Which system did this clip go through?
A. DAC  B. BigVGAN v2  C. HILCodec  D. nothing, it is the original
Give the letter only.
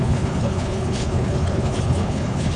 C